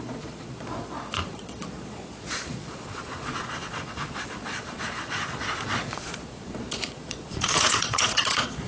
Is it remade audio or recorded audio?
remade